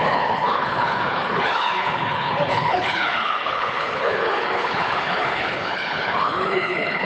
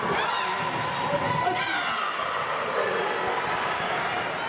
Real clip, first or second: second